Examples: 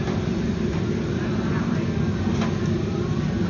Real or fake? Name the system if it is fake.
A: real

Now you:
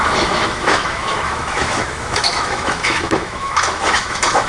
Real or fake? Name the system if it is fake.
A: fake, autoencoder, DAC-VAE